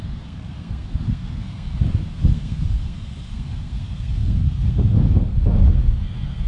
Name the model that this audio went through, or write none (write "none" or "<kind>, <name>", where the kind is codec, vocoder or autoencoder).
codec, SNAC